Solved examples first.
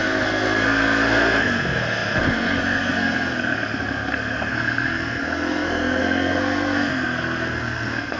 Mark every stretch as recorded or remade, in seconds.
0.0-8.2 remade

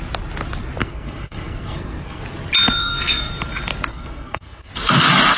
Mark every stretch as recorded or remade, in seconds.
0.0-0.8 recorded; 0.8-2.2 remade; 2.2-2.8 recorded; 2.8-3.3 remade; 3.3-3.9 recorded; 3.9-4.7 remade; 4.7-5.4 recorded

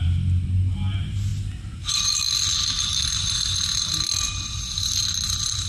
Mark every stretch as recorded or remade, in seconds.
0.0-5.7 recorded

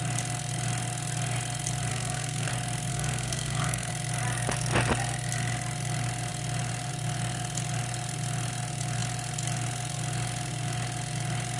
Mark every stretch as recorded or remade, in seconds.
0.0-1.9 recorded; 1.9-2.5 remade; 2.5-2.9 recorded; 2.9-3.9 remade; 3.9-11.6 recorded